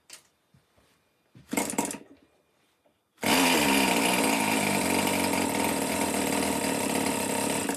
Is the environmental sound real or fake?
real